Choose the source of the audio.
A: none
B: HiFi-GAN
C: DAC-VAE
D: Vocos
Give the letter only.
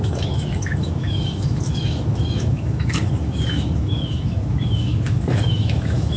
C